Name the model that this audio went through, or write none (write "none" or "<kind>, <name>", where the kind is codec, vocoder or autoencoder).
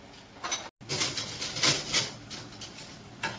none